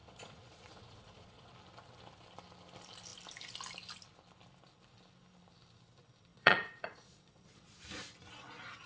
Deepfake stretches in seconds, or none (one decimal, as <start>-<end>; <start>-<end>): 0.0-1.5; 6.3-7.8